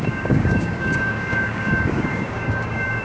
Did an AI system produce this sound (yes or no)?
yes